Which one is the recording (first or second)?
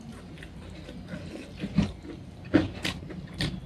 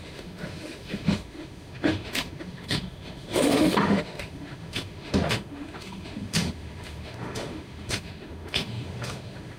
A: first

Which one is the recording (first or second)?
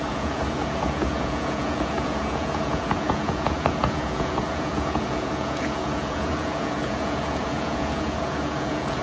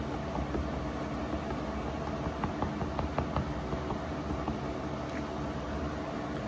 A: second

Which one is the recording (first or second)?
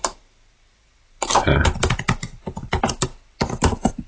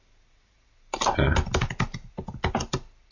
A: second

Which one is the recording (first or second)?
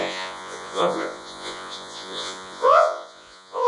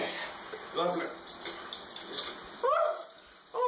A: second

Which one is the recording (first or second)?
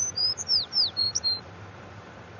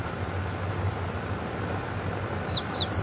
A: second